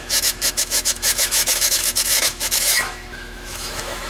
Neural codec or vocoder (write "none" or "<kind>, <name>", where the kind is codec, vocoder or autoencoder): autoencoder, DAC-VAE